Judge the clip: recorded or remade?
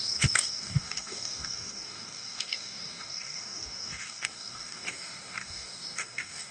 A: remade